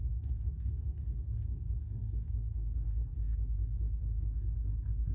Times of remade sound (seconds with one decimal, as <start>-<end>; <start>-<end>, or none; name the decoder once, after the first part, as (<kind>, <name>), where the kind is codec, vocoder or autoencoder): 0.0-5.1 (codec, SNAC)